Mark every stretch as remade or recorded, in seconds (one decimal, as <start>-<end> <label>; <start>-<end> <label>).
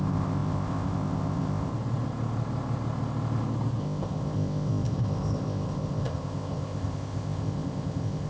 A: 0.0-1.7 remade; 1.7-3.8 recorded; 3.8-8.3 remade